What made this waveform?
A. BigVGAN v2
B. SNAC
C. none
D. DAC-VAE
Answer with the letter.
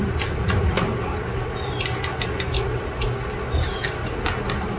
C